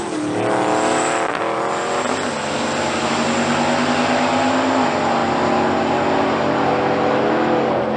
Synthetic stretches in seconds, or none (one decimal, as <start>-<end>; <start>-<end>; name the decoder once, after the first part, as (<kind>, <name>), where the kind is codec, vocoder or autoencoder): none